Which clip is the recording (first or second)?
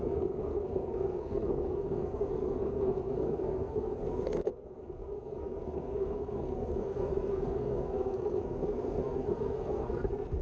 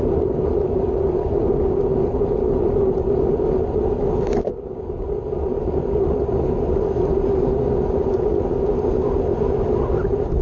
second